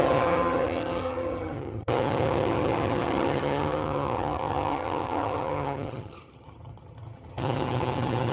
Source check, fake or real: fake